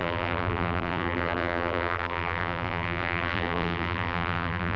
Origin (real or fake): fake